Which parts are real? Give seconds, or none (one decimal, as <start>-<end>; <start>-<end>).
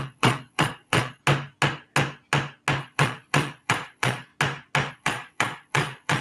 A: 1.2-2.8; 4.3-4.9